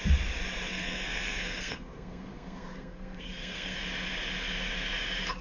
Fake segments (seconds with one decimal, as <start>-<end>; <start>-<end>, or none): 0.7-3.8